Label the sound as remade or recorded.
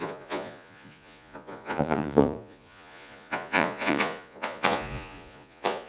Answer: remade